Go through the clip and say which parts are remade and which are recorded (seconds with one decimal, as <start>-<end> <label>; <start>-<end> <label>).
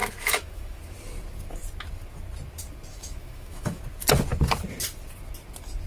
0.0-0.8 remade; 0.8-2.9 recorded; 2.9-3.8 remade; 3.8-5.9 recorded